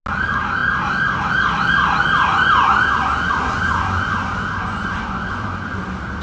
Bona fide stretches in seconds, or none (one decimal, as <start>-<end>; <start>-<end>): 0.0-2.3; 5.8-6.2